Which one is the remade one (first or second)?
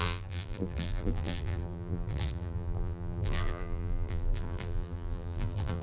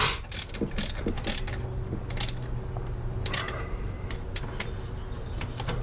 first